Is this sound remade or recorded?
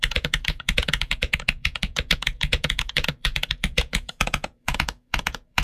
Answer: remade